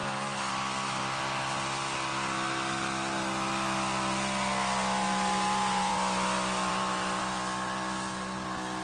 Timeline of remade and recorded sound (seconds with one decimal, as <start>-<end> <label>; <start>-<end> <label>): 0.0-0.5 remade; 0.5-6.7 recorded; 6.7-7.2 remade; 7.2-8.8 recorded

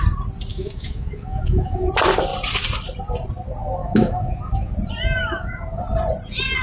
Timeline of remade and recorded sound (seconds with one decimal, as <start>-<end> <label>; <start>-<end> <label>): 0.0-0.5 recorded; 0.5-1.9 remade; 1.9-3.8 recorded; 3.8-4.7 remade; 4.7-5.2 recorded; 5.2-5.8 remade; 5.8-6.6 recorded

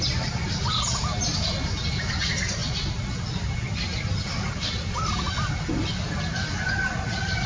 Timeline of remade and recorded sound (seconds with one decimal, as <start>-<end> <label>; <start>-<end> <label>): 0.0-7.5 recorded

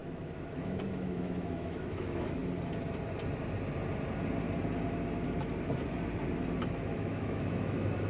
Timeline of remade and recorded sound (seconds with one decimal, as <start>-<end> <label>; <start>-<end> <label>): 0.0-2.4 remade; 2.4-6.6 recorded; 6.6-8.1 remade